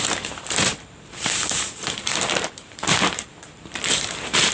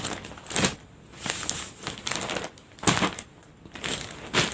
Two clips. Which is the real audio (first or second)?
second